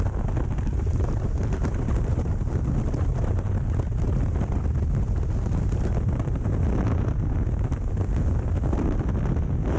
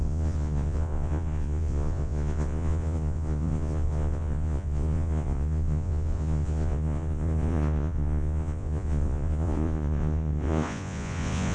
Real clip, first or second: first